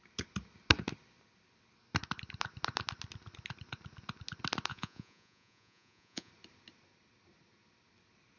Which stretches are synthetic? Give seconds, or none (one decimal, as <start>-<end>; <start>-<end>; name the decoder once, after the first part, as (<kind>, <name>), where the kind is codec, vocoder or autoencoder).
4.7-6.3 (vocoder, Vocos)